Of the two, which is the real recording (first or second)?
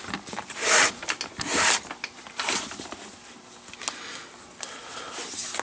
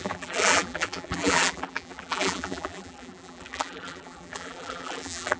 first